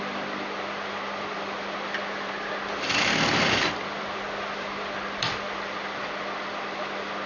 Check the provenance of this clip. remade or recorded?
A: recorded